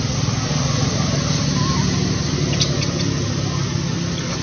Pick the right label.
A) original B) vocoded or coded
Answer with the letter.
A